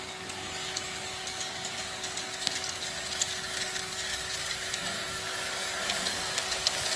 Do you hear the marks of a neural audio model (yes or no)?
yes